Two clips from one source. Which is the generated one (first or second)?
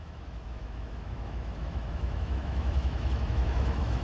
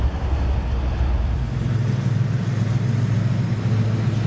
first